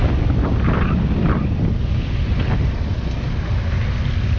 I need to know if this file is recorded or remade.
recorded